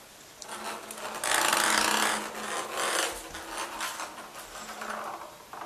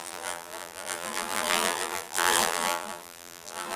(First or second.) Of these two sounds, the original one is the first